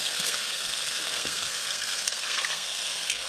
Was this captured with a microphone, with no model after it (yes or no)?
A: no